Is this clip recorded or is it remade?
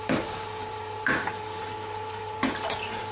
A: remade